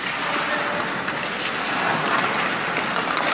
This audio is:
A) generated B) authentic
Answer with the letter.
B